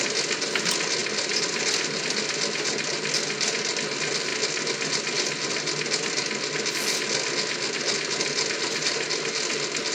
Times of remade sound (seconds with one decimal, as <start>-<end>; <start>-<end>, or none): none